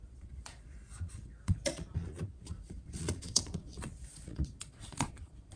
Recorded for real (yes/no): no